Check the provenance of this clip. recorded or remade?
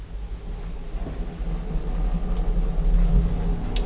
recorded